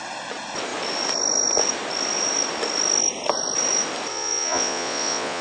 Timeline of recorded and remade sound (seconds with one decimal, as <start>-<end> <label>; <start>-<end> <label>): 0.0-4.1 recorded; 4.1-5.4 remade